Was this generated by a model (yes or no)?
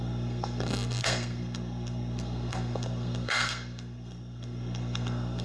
yes